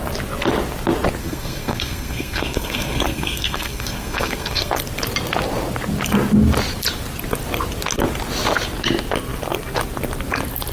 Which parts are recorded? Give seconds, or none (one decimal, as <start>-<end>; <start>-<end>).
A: 0.0-1.2; 4.7-10.7